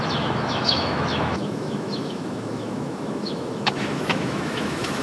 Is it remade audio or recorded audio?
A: remade